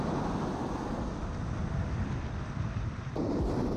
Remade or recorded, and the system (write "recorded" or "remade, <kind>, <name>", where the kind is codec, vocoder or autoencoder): recorded